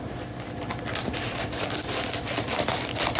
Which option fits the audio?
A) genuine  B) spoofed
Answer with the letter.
A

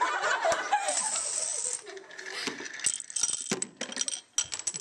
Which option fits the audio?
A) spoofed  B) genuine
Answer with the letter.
B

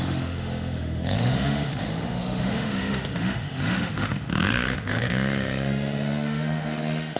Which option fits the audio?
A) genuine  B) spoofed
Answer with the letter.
B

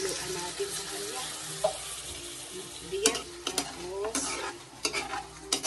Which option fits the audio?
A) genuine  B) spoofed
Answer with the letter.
A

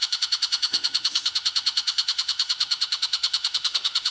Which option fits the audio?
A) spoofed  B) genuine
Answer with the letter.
A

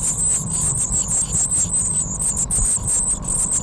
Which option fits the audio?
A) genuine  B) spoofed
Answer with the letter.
A